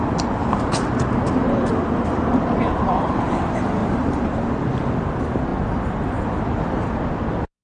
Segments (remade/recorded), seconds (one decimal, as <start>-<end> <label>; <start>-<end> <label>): 0.0-0.4 recorded; 0.4-2.1 remade; 2.1-3.8 recorded; 3.8-4.5 remade; 4.5-7.6 recorded